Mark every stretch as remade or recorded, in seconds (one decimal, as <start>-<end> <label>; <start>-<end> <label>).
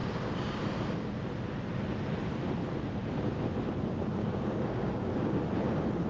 0.0-0.6 remade; 0.6-4.2 recorded; 4.2-5.4 remade; 5.4-6.1 recorded